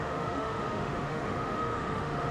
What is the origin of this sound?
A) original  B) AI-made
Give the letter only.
B